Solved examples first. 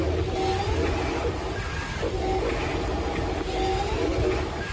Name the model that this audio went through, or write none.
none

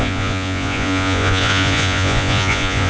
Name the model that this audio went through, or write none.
vocoder, Vocos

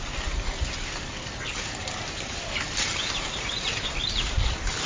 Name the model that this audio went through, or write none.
none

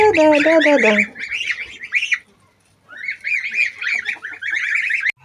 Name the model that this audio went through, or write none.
none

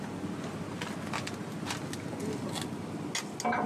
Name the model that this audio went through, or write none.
none